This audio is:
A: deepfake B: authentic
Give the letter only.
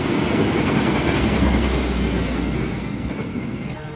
A